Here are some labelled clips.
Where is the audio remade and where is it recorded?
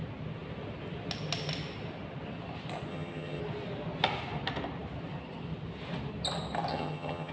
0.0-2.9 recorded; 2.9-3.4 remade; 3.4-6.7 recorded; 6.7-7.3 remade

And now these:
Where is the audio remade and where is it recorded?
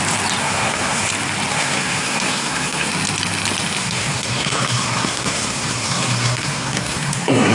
0.0-0.4 recorded; 0.4-1.1 remade; 1.1-1.5 recorded; 1.5-2.9 remade; 2.9-3.8 recorded; 3.8-7.5 remade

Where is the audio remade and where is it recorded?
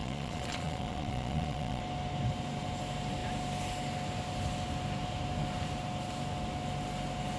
0.0-1.8 remade; 1.8-7.4 recorded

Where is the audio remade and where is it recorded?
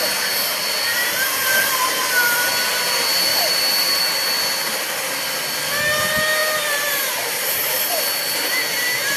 0.0-1.0 recorded; 1.0-2.5 remade; 2.5-3.3 recorded; 3.3-4.0 remade; 4.0-6.4 recorded; 6.4-7.6 remade; 7.6-9.2 recorded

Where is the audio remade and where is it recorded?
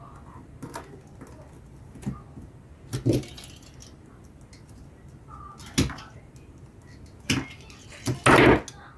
0.0-9.0 recorded